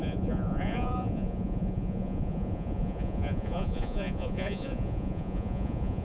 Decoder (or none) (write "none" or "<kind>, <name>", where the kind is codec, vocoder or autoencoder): vocoder, Vocos